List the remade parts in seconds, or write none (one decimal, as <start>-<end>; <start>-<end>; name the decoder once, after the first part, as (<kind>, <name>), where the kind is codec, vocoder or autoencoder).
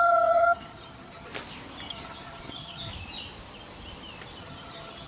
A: 0.0-1.3 (vocoder, HiFi-GAN); 1.9-2.9; 4.4-5.1